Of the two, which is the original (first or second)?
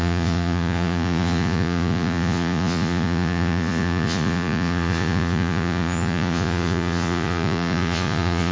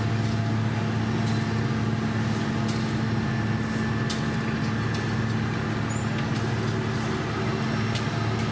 second